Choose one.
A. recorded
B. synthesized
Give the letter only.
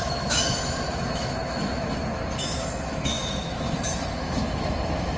B